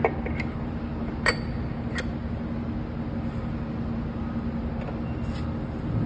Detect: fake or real real